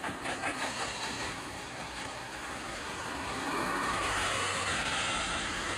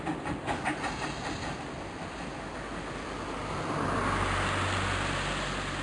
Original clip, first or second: second